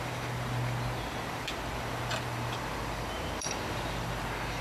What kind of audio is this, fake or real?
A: fake